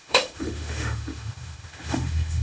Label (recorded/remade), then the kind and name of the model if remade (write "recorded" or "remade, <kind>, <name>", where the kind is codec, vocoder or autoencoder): remade, autoencoder, DAC-VAE